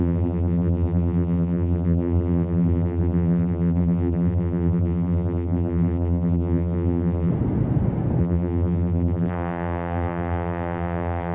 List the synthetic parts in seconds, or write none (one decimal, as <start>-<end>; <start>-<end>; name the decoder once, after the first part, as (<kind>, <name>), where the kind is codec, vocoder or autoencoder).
0.0-7.3 (vocoder, BigVGAN v2); 8.2-11.3